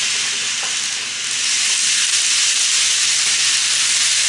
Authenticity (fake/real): real